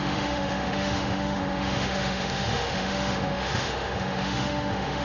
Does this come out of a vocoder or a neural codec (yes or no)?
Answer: yes